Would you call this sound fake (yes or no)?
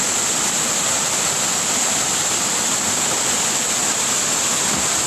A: no